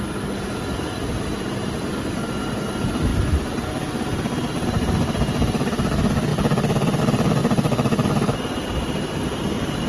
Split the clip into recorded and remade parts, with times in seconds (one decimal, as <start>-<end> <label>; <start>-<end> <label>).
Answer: 0.0-3.1 recorded; 3.1-4.8 remade; 4.8-6.3 recorded; 6.3-7.0 remade; 7.0-7.4 recorded; 7.4-8.4 remade; 8.4-9.9 recorded

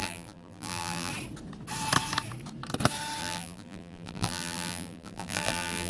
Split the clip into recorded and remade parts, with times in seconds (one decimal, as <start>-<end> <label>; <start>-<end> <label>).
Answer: 0.0-1.1 remade; 1.1-3.2 recorded; 3.2-5.9 remade